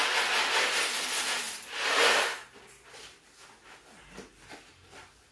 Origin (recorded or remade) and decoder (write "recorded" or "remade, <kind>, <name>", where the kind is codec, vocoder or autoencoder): recorded